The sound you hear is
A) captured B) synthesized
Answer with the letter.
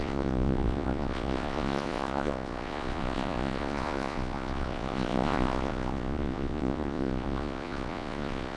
B